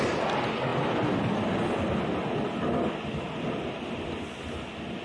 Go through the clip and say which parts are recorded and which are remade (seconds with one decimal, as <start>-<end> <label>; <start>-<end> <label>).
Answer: 0.0-5.0 recorded

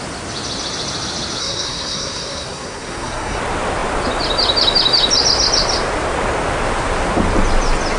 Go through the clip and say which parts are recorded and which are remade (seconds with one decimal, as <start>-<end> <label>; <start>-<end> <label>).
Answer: 0.0-1.4 recorded; 1.4-3.4 remade; 3.4-8.0 recorded

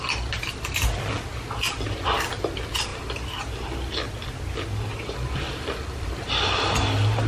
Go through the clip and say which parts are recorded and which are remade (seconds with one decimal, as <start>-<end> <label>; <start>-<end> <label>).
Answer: 0.0-7.3 recorded

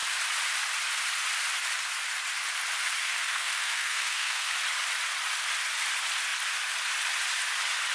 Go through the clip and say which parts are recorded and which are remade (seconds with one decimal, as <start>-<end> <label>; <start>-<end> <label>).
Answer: 0.0-3.0 recorded; 3.0-4.5 remade; 4.5-7.9 recorded

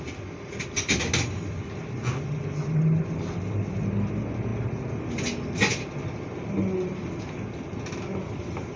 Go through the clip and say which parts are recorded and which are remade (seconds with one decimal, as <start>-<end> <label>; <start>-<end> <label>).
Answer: 0.0-8.8 recorded